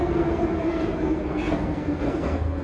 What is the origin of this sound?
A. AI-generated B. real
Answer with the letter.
A